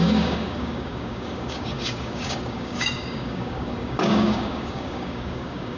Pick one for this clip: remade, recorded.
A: remade